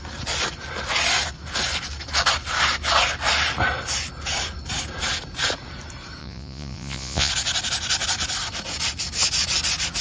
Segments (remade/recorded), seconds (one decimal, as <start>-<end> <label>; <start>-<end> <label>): 0.0-6.2 recorded; 6.2-7.3 remade; 7.3-10.0 recorded